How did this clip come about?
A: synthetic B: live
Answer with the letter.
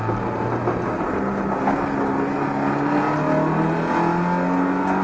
B